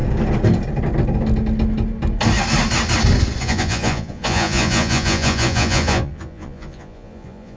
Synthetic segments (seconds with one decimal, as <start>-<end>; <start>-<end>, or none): 3.4-7.6